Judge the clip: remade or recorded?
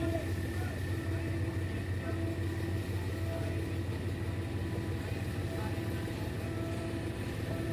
recorded